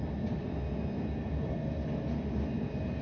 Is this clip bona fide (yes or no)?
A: yes